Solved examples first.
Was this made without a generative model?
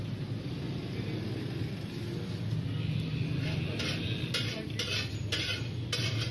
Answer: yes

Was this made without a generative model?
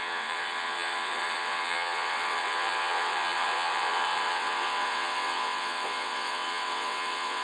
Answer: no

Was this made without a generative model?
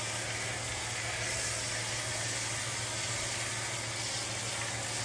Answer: yes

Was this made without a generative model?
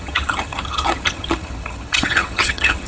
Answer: no